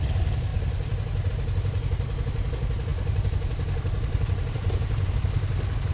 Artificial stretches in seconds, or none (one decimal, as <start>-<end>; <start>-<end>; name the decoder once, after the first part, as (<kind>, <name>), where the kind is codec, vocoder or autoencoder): none

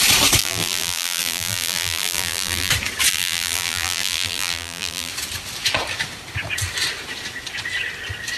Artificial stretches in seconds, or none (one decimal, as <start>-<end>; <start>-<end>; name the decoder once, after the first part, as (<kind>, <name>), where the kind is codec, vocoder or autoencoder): 0.4-2.7 (vocoder, BigVGAN v2); 3.1-5.1

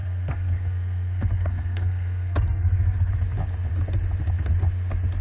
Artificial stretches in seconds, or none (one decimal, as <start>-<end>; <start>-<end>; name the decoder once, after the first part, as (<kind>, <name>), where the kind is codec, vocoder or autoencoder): 0.0-3.1 (codec, SNAC)